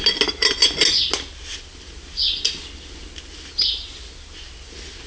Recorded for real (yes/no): yes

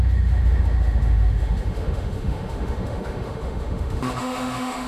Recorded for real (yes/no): no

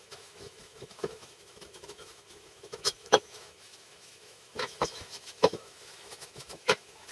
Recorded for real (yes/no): no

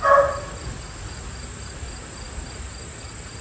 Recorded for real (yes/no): yes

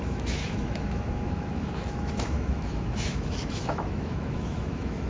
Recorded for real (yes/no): no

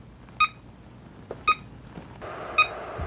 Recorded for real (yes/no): yes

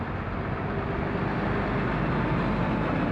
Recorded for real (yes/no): yes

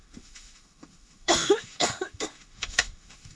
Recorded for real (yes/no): no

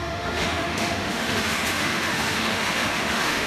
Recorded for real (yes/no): no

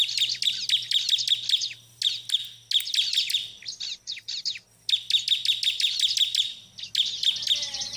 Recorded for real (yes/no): yes